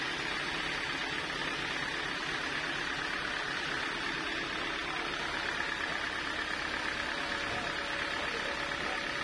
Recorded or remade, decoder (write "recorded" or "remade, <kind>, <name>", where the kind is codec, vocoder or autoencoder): recorded